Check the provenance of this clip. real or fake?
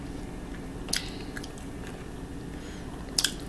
real